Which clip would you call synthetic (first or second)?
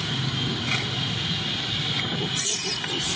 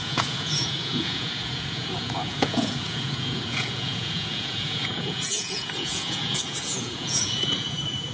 second